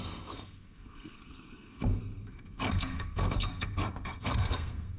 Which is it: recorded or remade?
remade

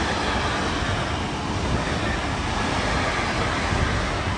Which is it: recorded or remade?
recorded